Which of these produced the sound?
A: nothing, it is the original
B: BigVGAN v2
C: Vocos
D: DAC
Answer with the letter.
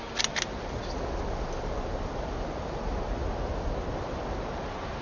A